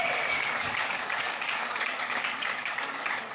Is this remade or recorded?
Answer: remade